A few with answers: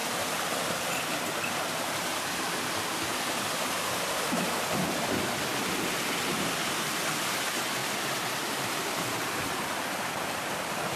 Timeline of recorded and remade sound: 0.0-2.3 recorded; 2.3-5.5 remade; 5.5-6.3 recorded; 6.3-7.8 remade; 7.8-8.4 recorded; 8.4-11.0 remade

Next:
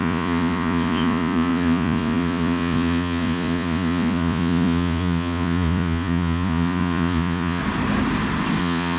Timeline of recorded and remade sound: 0.0-7.6 remade; 7.6-8.6 recorded; 8.6-9.0 remade

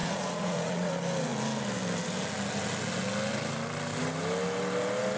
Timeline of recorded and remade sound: 0.0-0.9 remade; 0.9-5.2 recorded

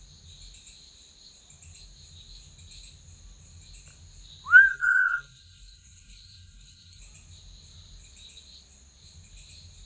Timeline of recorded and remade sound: 0.0-4.7 recorded; 4.7-7.0 remade; 7.0-9.9 recorded